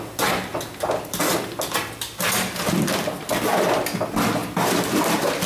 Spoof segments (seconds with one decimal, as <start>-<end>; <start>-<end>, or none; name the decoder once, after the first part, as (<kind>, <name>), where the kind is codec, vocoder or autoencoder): 4.4-5.5 (vocoder, BigVGAN v2)

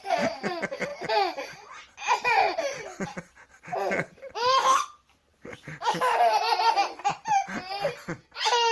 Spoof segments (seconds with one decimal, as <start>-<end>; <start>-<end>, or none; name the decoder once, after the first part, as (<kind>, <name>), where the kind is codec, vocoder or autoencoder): none

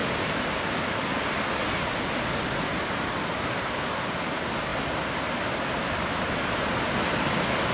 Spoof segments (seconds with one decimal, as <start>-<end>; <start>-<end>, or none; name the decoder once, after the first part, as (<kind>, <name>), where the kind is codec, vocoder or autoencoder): 0.0-1.3 (vocoder, BigVGAN v2)

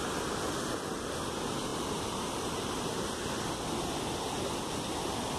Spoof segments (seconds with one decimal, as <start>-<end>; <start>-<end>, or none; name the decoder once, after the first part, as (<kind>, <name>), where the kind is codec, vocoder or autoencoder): 1.7-3.4 (vocoder, BigVGAN v2)

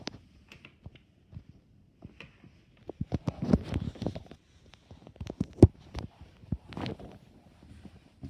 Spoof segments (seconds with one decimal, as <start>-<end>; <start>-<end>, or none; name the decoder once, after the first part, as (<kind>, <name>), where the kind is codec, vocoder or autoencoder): 4.1-7.3 (vocoder, BigVGAN v2)

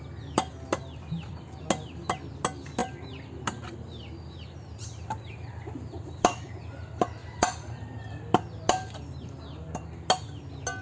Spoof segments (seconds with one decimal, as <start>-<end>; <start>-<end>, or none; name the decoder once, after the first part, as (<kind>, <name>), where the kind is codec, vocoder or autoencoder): 2.8-6.5 (vocoder, BigVGAN v2); 7.2-8.6

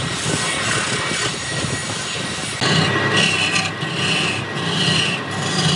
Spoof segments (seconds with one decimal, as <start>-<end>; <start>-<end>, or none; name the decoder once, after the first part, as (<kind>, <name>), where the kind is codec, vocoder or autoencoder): none